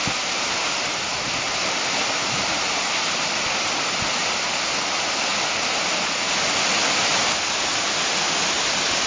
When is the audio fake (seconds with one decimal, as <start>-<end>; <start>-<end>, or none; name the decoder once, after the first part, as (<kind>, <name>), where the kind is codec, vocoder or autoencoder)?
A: none